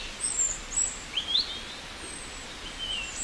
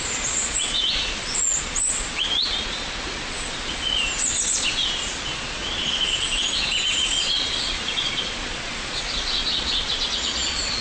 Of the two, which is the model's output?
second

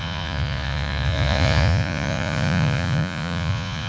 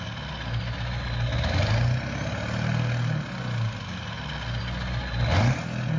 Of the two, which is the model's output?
first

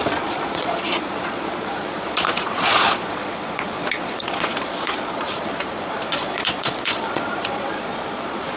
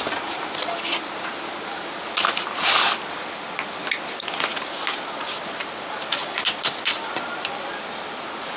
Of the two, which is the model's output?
first